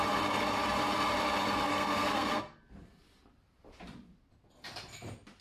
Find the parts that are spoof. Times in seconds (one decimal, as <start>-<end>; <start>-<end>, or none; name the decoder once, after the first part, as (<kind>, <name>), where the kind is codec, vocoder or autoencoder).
1.7-2.4 (codec, SNAC)